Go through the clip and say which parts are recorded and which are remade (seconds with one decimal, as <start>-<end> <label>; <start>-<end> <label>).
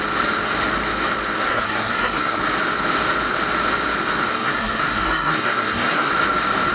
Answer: 0.0-1.5 recorded; 1.5-2.4 remade; 2.4-4.3 recorded; 4.3-6.1 remade; 6.1-6.7 recorded